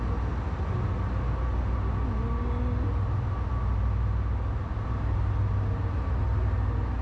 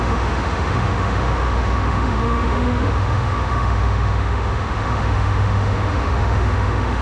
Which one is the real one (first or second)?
first